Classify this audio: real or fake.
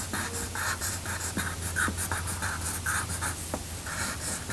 real